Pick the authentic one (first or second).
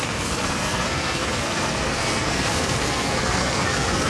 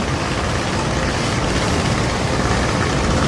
second